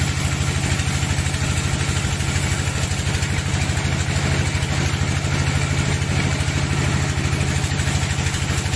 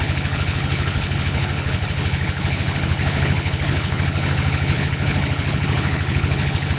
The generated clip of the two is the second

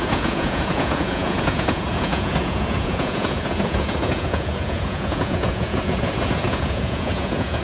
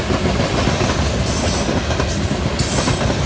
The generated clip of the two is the first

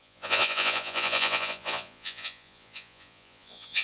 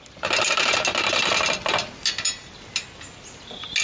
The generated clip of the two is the first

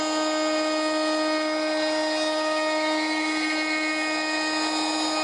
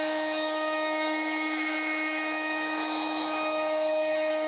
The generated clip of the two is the second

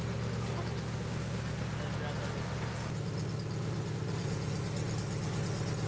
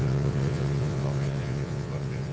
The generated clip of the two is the second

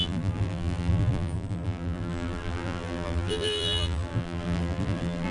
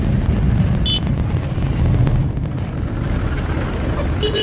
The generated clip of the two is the first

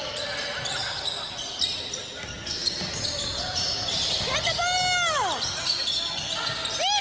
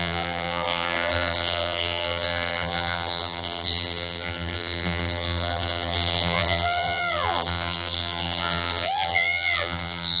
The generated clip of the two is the second